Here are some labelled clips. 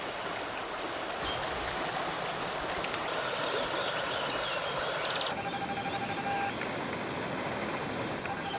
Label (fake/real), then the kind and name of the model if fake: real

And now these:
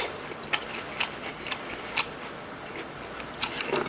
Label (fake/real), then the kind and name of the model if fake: real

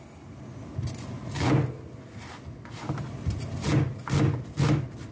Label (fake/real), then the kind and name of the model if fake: real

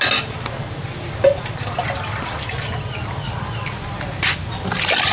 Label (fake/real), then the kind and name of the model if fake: real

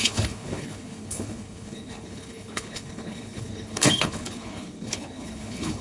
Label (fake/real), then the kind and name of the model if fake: fake, codec, HILCodec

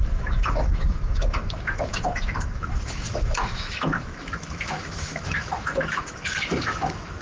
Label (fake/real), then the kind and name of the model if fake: fake, autoencoder, DAC-VAE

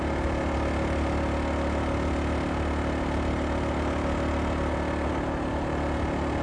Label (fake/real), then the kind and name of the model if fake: real